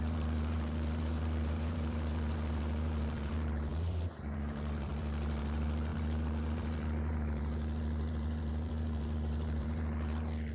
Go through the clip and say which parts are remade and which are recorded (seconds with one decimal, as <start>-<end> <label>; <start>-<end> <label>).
0.0-10.5 remade